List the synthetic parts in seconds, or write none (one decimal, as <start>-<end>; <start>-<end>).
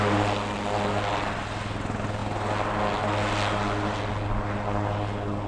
none